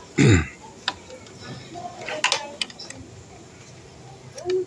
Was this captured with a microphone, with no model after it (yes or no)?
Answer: yes